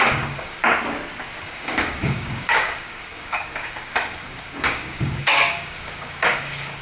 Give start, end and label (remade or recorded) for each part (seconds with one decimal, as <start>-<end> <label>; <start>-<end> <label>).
0.0-0.6 remade; 0.6-1.4 recorded; 1.4-6.8 remade